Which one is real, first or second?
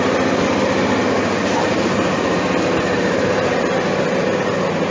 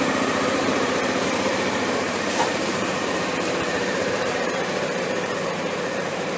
first